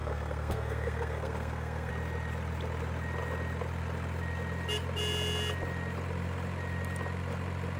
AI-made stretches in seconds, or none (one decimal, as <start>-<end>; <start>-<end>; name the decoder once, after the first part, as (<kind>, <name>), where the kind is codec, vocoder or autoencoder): 0.0-1.9 (codec, SNAC)